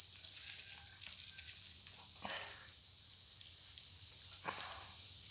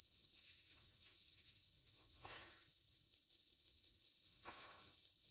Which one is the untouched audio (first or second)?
first